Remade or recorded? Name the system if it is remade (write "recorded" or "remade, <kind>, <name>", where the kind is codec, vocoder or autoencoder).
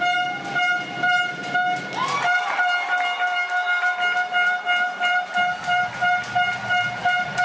recorded